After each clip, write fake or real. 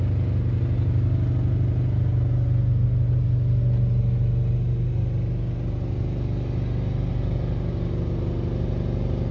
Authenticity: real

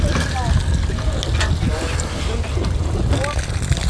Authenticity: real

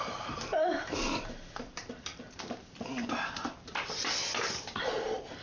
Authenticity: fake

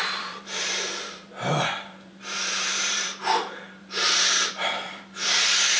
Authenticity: fake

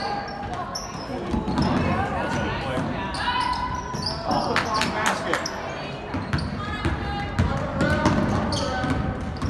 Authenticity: real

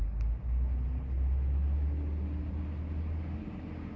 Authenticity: real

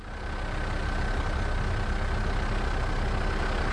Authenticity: real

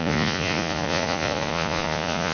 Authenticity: fake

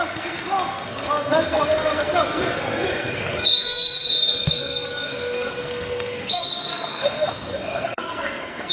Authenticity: fake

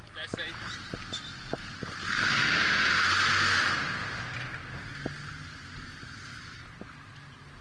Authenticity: real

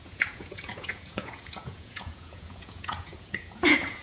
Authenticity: fake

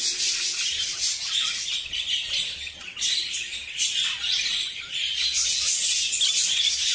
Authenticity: real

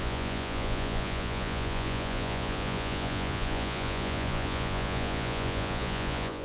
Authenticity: fake